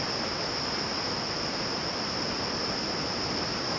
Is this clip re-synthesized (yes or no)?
no